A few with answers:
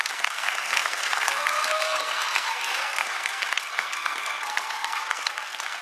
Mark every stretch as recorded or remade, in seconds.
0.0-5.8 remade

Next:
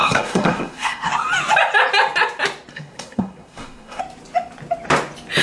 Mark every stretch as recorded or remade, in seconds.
0.0-1.1 remade; 1.1-2.7 recorded; 2.7-4.0 remade; 4.0-5.4 recorded

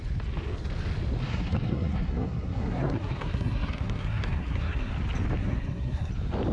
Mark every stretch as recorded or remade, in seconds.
0.0-1.2 recorded; 1.2-4.9 remade; 4.9-5.4 recorded; 5.4-6.1 remade; 6.1-6.5 recorded

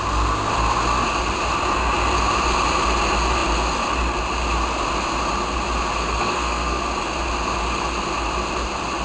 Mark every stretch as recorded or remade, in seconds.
0.0-6.0 recorded; 6.0-6.8 remade; 6.8-9.0 recorded

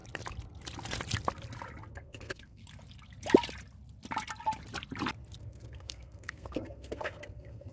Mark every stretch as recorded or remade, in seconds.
0.0-1.9 recorded; 1.9-2.6 remade; 2.6-5.4 recorded; 5.4-7.7 remade

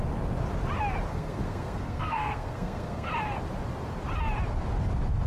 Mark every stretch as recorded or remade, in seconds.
0.0-1.1 recorded; 1.1-3.1 remade; 3.1-5.3 recorded